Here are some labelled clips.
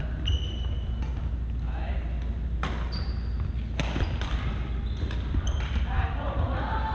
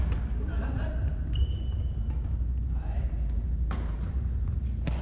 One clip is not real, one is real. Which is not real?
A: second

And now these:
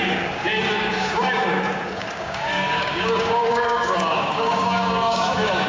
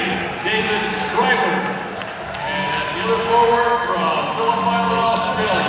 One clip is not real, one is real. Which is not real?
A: first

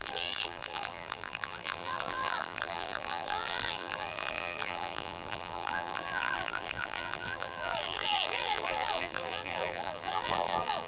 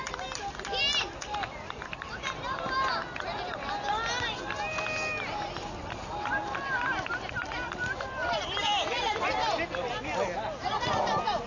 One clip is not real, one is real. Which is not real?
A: first